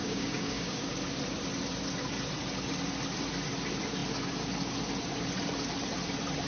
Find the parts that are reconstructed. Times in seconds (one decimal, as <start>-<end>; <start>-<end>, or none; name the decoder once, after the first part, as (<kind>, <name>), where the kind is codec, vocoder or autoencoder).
0.0-0.9 (codec, DAC)